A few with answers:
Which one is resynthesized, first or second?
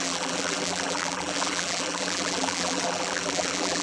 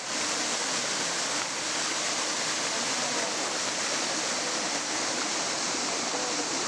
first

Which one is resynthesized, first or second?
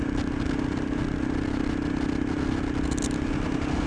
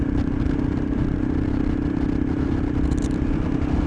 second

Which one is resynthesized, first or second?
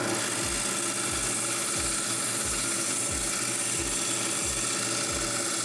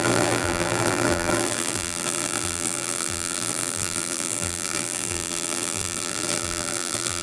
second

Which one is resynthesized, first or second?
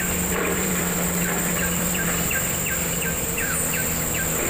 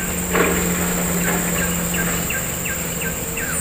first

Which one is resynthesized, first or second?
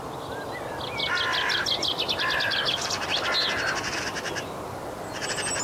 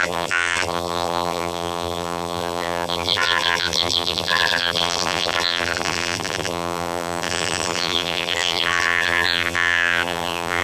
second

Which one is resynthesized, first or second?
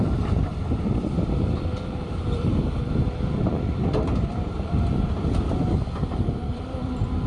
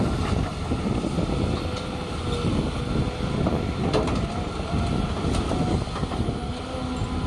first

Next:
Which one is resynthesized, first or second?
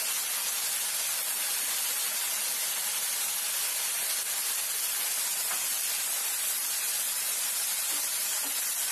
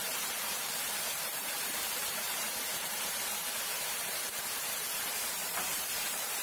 second